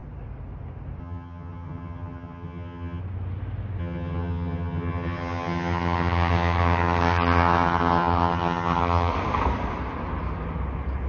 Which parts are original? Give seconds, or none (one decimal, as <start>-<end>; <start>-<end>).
0.0-1.0; 3.0-3.8; 9.1-11.1